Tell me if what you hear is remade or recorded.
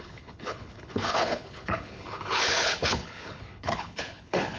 remade